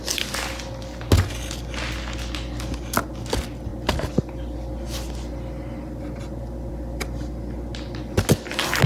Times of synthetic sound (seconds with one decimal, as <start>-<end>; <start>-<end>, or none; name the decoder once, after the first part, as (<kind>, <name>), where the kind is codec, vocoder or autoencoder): none